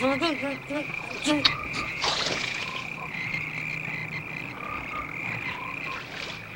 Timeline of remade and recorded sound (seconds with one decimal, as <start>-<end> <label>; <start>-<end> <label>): 0.0-0.4 recorded; 0.4-3.3 remade; 3.3-6.6 recorded

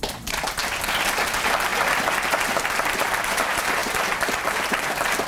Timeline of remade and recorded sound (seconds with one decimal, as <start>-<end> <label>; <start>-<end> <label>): 0.0-0.6 remade; 0.6-1.2 recorded; 1.2-1.7 remade; 1.7-2.4 recorded; 2.4-5.3 remade

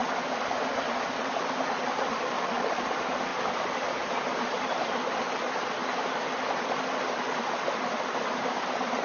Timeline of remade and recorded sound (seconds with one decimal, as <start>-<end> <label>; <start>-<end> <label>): 0.0-3.3 recorded; 3.3-4.4 remade; 4.4-5.8 recorded; 5.8-7.2 remade; 7.2-9.0 recorded

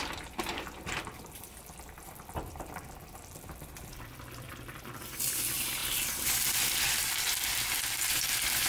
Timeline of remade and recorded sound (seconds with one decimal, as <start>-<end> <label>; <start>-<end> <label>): 0.0-8.7 remade

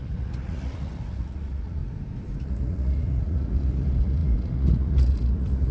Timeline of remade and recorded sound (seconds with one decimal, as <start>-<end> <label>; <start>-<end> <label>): 0.0-1.8 remade; 1.8-2.4 recorded; 2.4-5.7 remade

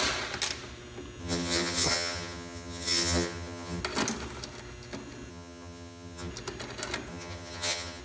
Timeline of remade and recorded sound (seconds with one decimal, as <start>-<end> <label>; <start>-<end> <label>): 0.0-1.2 recorded; 1.2-3.8 remade; 3.8-5.3 recorded; 5.3-6.3 remade; 6.3-7.1 recorded; 7.1-8.0 remade